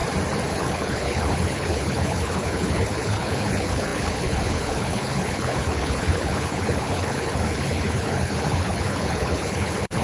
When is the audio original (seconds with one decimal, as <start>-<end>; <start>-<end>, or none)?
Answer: 0.0-0.5